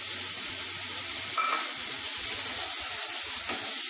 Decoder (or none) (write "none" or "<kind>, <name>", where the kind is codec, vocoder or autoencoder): none